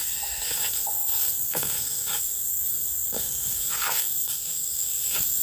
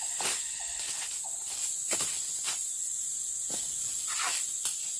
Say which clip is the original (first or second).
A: second